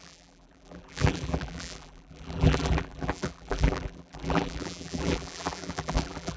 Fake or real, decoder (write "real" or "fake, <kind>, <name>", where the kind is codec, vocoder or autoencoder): fake, vocoder, BigVGAN v2